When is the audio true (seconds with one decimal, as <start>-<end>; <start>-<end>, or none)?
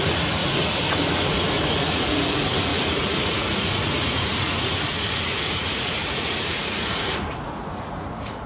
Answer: none